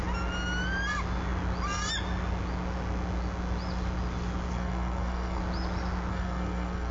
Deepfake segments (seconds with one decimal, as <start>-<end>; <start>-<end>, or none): 4.5-5.4; 6.1-6.9